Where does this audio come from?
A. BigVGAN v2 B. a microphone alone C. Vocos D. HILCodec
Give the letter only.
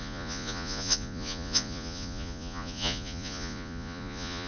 C